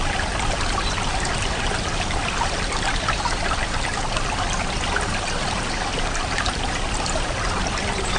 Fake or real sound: real